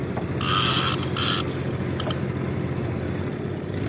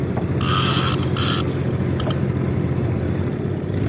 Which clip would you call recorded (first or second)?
first